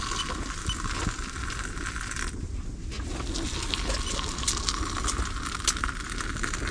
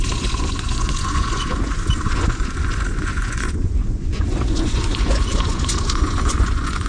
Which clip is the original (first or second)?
first